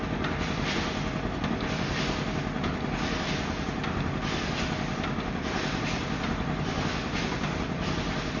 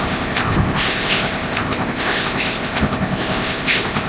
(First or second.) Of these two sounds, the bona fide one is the first